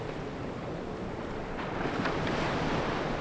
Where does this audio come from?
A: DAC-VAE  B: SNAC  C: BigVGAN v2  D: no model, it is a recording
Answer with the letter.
D